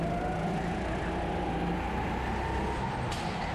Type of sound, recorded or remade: recorded